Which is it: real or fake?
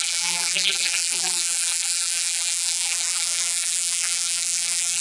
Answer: fake